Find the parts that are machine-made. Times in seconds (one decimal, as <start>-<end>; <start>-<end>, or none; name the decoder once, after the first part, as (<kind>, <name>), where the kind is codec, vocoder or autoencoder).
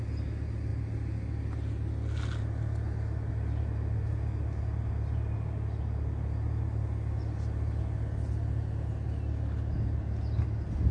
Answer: none